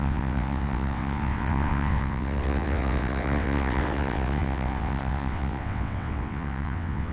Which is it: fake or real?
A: fake